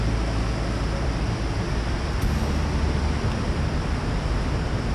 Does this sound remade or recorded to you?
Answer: recorded